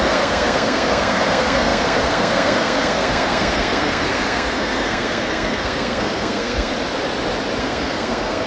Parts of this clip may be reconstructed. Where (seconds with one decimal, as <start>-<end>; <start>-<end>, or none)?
0.0-6.7; 7.6-8.5